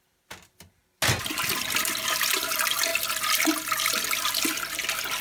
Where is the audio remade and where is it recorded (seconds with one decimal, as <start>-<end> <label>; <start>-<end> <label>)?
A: 0.0-0.8 remade; 0.8-1.3 recorded; 1.3-2.9 remade; 2.9-3.9 recorded; 3.9-5.2 remade